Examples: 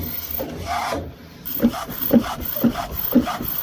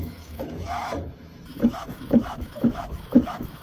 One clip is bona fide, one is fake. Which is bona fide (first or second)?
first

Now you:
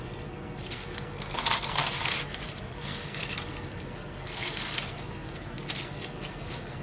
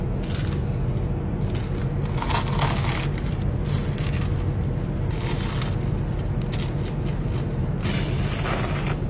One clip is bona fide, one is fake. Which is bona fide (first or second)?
second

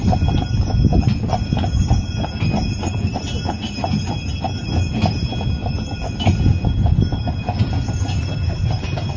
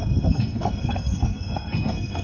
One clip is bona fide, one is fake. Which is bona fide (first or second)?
first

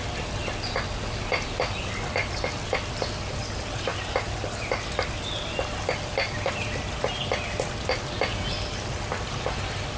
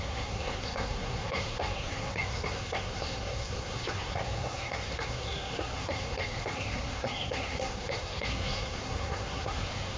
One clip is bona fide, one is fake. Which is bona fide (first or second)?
first